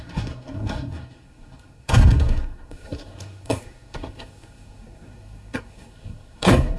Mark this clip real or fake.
fake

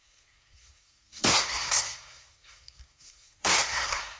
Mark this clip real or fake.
fake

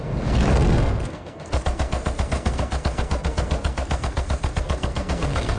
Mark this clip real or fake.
fake